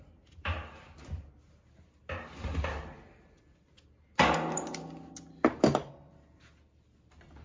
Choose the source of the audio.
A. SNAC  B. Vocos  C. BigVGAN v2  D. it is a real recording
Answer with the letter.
D